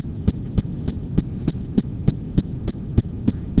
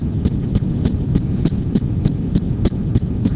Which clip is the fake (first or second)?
second